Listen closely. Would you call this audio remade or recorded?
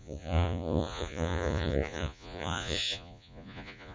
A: remade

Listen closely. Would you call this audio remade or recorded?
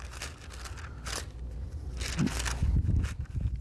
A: recorded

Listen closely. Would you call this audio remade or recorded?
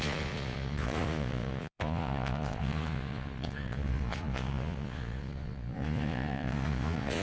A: remade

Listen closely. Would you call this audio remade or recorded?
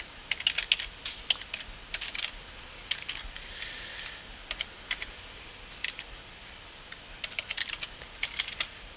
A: recorded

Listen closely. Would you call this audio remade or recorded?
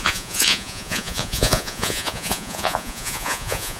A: remade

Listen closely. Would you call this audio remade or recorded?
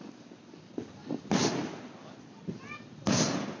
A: recorded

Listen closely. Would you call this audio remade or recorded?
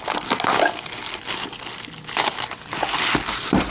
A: recorded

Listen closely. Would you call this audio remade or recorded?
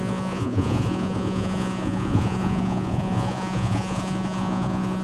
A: remade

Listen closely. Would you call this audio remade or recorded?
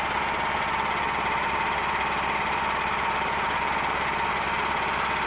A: recorded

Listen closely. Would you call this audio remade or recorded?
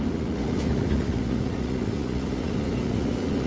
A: remade